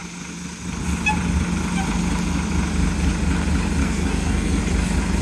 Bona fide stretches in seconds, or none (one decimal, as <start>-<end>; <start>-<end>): 0.0-3.8; 4.6-5.2